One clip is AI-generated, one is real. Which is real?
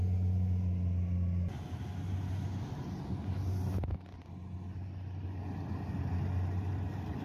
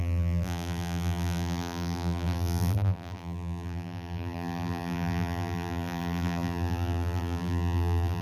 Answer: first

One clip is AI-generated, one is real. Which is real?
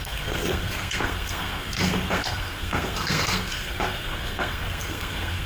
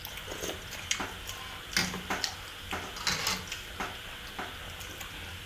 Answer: second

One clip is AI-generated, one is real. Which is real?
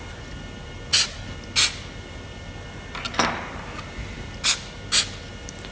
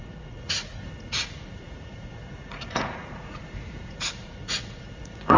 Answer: first